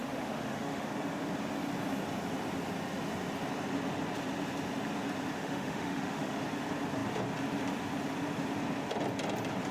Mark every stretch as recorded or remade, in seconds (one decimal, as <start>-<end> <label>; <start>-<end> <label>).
0.0-0.9 remade; 0.9-5.4 recorded; 5.4-6.4 remade; 6.4-9.7 recorded